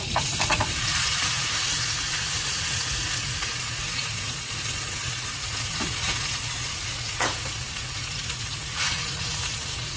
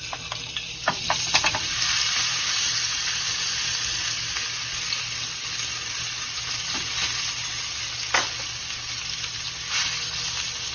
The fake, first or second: first